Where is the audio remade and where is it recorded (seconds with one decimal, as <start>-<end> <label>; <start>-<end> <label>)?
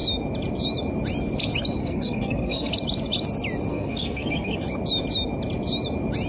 0.0-1.8 recorded; 1.8-2.7 remade; 2.7-3.7 recorded; 3.7-4.6 remade; 4.6-6.3 recorded